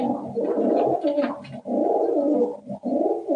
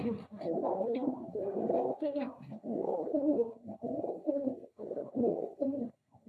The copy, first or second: second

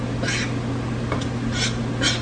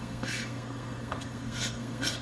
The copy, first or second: second